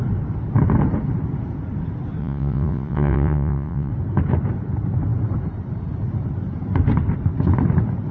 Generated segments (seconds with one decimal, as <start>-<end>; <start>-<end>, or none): 2.2-3.9